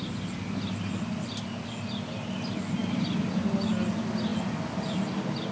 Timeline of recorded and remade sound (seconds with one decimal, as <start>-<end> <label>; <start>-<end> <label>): 0.0-5.5 recorded